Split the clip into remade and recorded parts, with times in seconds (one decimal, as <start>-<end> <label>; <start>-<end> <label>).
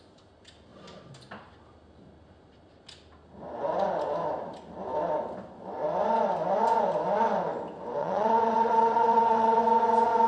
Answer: 0.0-8.0 recorded; 8.0-9.6 remade; 9.6-10.3 recorded